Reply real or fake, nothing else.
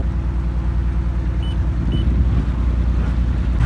real